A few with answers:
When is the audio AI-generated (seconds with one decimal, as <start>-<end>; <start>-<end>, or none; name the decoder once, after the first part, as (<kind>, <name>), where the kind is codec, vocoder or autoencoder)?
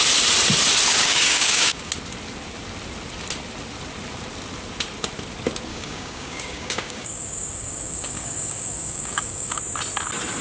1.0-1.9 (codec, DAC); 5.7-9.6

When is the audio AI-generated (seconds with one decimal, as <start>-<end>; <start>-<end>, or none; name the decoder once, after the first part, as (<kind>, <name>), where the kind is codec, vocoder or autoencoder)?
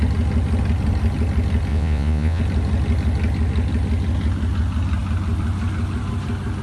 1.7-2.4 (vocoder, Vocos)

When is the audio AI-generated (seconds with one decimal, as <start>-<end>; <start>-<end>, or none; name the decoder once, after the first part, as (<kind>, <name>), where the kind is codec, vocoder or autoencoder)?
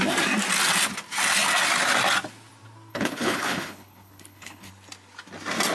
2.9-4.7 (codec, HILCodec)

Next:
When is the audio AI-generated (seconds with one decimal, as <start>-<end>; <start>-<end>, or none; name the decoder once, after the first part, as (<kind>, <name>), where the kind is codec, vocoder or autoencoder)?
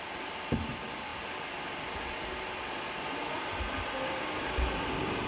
none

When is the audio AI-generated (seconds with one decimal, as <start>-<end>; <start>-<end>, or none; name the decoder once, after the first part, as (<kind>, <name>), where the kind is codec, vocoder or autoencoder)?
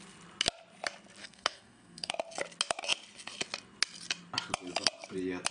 1.2-2.1 (codec, SNAC)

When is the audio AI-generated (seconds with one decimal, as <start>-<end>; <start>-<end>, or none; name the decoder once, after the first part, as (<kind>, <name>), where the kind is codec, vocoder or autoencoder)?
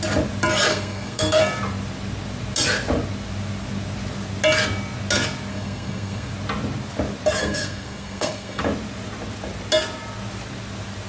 0.7-1.4 (codec, SNAC); 5.5-6.3; 7.4-8.6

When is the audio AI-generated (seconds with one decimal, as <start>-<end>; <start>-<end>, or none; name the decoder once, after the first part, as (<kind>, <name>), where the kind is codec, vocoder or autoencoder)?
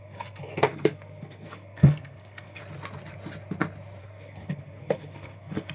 0.0-2.6 (codec, SNAC); 4.0-5.7